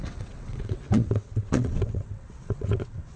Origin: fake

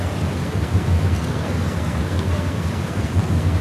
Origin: fake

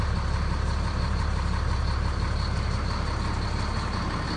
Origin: fake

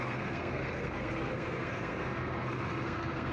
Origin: fake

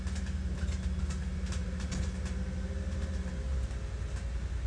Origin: real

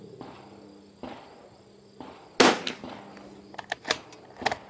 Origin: real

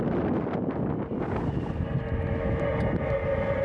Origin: real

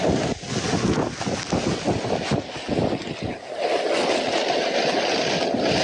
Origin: real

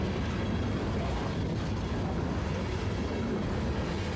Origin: real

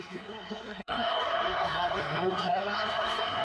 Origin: fake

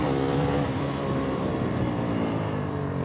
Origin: fake